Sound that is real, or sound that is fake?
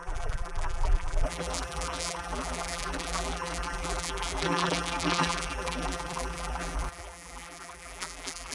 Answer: fake